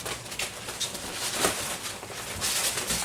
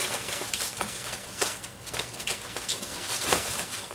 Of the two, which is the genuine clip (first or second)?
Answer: first